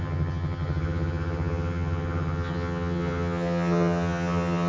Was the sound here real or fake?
fake